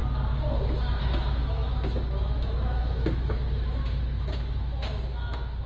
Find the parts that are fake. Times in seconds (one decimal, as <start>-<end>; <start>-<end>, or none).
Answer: 1.0-5.7